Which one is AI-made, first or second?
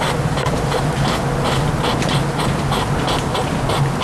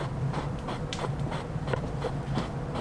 second